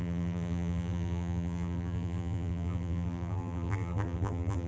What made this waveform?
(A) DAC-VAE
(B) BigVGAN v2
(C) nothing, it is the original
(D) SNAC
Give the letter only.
B